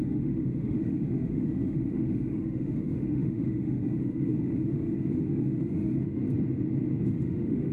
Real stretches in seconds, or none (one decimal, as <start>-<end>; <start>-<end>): 6.2-7.0